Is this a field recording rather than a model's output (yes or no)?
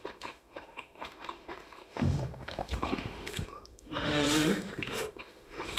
no